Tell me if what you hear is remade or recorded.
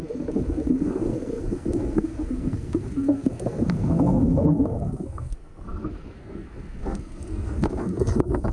remade